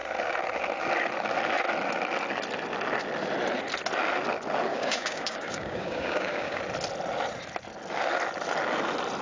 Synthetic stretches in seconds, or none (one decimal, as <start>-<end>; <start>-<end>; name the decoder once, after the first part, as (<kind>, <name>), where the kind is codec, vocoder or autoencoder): 4.7-6.6 (codec, DAC)